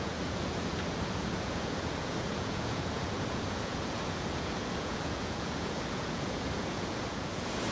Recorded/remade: remade